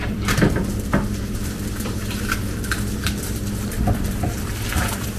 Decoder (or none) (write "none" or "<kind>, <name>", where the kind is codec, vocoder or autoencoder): vocoder, BigVGAN v2